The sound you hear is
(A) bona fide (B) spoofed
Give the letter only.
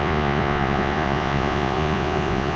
B